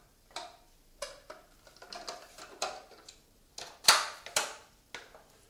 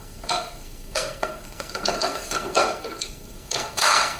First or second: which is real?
first